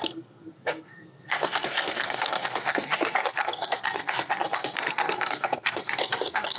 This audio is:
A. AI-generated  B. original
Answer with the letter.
A